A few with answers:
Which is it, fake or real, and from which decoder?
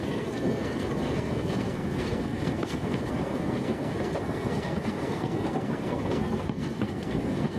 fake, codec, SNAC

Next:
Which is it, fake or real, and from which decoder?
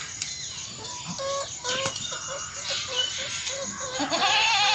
real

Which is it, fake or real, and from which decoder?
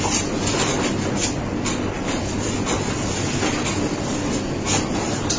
real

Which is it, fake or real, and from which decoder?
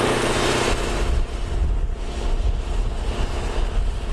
real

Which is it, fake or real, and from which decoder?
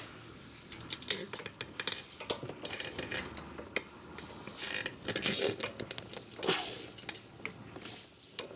real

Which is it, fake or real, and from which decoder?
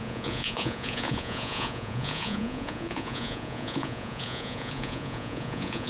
fake, vocoder, Vocos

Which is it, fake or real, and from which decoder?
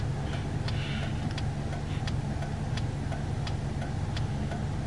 real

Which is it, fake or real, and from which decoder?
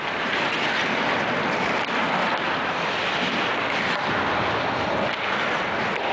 real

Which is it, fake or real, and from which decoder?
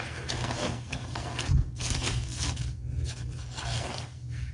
fake, codec, SNAC